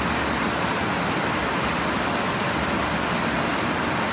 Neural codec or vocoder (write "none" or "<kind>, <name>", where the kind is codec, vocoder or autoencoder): none